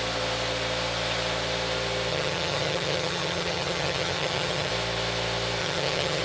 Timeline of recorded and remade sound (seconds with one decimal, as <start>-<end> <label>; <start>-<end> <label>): 0.0-2.1 recorded; 2.1-4.7 remade; 4.7-5.6 recorded; 5.6-6.2 remade